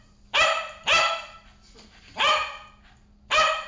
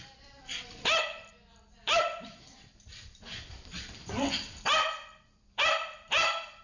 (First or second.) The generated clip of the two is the second